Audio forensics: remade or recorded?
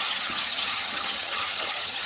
remade